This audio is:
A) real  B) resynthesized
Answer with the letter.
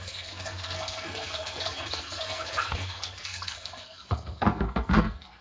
B